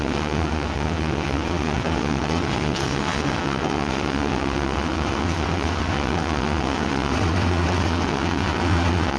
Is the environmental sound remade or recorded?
remade